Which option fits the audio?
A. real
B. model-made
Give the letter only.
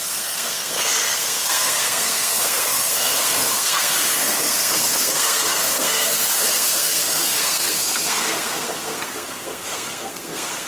B